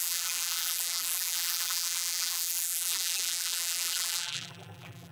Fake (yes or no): yes